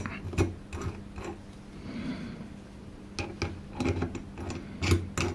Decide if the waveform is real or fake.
real